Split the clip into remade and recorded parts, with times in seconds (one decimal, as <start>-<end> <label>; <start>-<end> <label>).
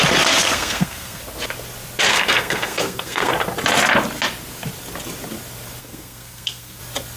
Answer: 0.0-0.4 recorded; 0.4-1.2 remade; 1.2-2.1 recorded; 2.1-3.3 remade; 3.3-5.8 recorded; 5.8-6.8 remade; 6.8-7.2 recorded